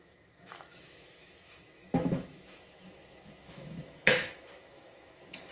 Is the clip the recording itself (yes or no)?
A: no